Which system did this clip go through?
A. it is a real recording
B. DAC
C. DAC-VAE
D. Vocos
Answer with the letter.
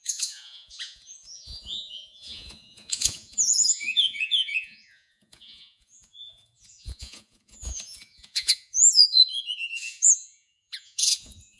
D